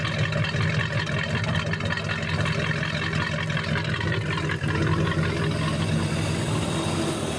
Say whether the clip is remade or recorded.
recorded